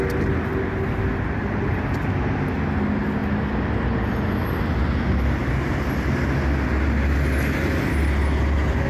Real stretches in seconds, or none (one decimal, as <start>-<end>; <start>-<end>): 0.0-8.9